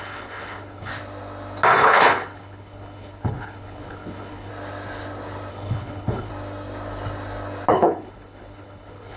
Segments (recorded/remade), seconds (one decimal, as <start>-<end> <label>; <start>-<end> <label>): 0.0-0.9 remade; 0.9-1.8 recorded; 1.8-4.5 remade; 4.5-5.5 recorded; 5.5-6.3 remade; 6.3-7.7 recorded; 7.7-9.2 remade